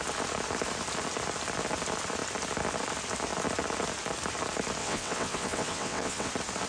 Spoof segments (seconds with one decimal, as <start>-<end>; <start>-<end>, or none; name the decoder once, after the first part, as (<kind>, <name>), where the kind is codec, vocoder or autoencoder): 4.8-6.3 (vocoder, WaveNeXt)